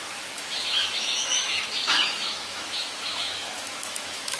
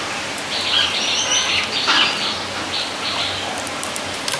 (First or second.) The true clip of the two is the second